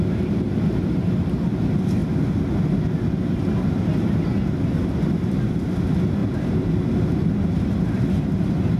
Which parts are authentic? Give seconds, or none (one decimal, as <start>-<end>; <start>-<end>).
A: 0.0-6.2; 6.8-8.8